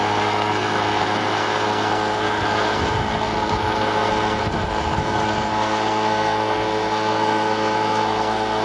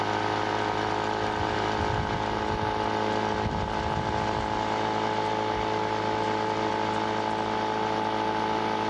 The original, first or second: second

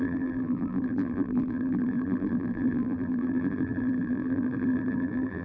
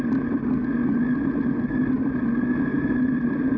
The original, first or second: second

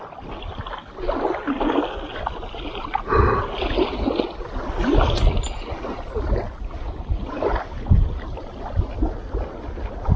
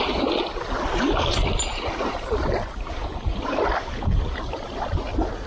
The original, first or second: first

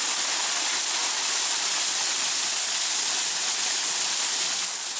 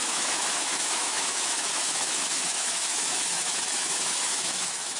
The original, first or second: first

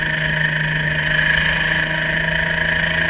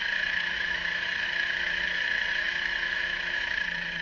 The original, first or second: first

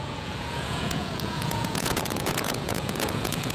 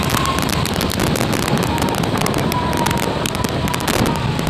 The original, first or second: second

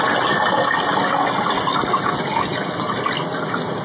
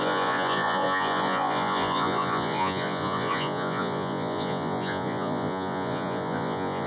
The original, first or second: first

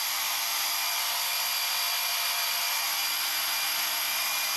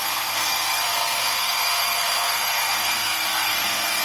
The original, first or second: first